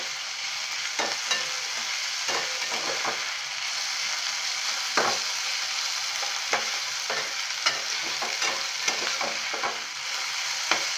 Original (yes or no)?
yes